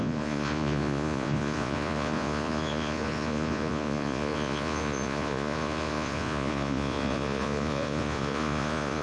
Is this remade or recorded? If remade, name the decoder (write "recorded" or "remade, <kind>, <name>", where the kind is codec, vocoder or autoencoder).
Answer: remade, vocoder, Vocos